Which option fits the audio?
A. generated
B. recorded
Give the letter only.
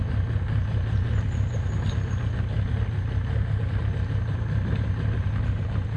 B